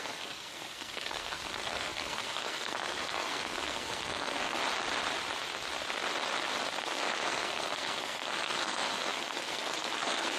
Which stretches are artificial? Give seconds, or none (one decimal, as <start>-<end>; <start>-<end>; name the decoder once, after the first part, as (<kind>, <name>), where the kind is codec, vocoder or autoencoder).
0.0-4.6 (codec, SNAC); 6.8-10.4